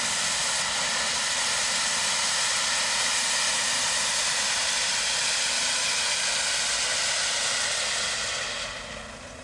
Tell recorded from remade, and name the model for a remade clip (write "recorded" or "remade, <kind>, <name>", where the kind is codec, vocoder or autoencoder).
recorded